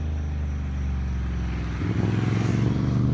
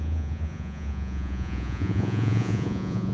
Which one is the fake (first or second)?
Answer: second